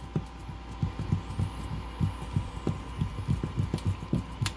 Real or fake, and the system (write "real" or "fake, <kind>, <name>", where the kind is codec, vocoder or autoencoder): real